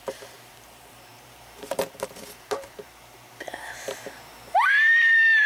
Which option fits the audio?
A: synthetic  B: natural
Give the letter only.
A